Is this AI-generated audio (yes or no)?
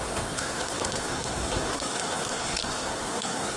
yes